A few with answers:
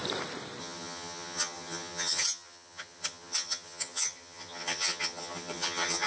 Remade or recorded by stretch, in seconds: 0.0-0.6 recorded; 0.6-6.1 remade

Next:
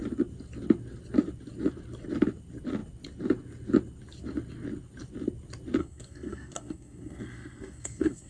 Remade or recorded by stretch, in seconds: 0.0-5.8 recorded; 5.8-8.3 remade

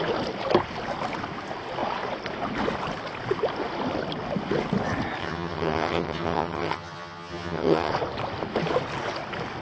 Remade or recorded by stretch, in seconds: 0.0-5.2 recorded; 5.2-7.9 remade; 7.9-9.6 recorded

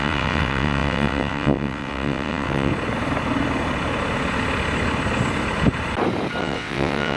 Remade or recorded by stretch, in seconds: 0.0-2.7 remade; 2.7-6.4 recorded; 6.4-7.2 remade

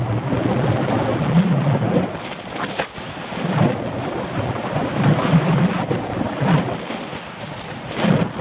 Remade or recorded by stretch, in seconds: 0.0-4.9 recorded; 4.9-5.7 remade; 5.7-8.4 recorded

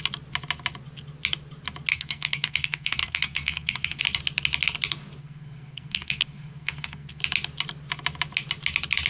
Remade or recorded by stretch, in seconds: 0.0-1.9 recorded; 1.9-4.0 remade; 4.0-5.2 recorded; 5.2-7.2 remade; 7.2-9.1 recorded